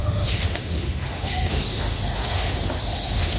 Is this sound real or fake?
fake